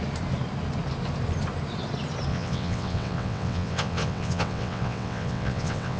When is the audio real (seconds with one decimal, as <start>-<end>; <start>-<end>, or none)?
0.0-2.3